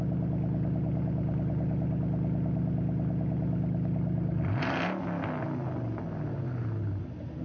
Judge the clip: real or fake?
real